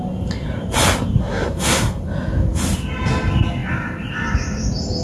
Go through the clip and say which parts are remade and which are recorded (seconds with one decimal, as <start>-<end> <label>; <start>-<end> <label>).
0.0-1.2 recorded; 1.2-2.0 remade; 2.0-5.0 recorded